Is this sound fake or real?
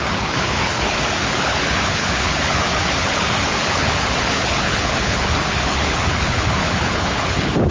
fake